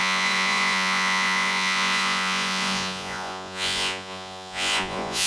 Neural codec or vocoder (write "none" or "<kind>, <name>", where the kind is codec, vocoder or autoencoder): vocoder, Vocos